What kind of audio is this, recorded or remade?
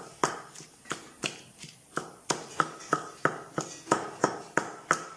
recorded